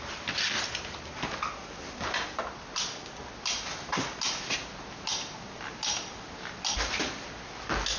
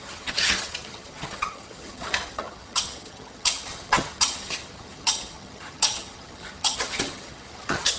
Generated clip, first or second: second